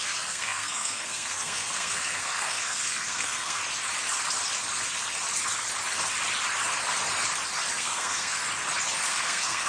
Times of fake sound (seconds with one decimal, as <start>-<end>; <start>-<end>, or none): 0.0-3.6; 7.8-8.4; 9.1-9.7